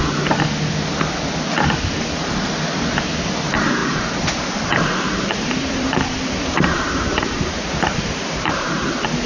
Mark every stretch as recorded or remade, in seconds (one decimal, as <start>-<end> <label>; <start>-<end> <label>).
0.0-3.8 recorded; 3.8-8.9 remade; 8.9-9.3 recorded